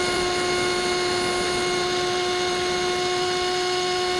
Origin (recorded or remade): remade